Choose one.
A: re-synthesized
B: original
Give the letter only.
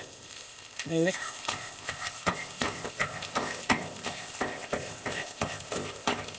A